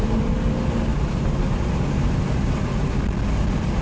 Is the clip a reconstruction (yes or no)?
no